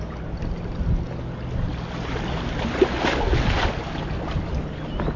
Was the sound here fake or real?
real